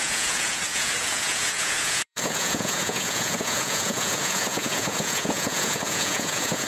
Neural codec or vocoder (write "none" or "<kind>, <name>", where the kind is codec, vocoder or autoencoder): vocoder, Vocos